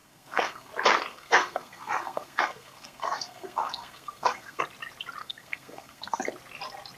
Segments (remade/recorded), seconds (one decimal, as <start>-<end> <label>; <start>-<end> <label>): 0.0-0.7 remade; 0.7-1.1 recorded; 1.1-4.6 remade; 4.6-5.2 recorded; 5.2-6.2 remade; 6.2-7.0 recorded